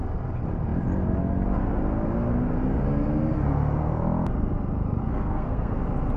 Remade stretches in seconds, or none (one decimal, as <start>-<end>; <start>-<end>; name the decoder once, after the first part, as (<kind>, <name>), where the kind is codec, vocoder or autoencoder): 5.0-5.8 (codec, SNAC)